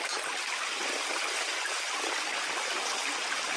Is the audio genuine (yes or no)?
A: yes